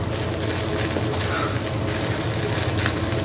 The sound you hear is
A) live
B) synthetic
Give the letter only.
A